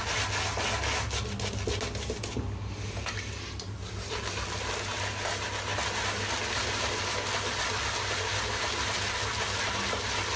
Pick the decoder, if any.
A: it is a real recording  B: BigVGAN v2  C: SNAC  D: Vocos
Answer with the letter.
A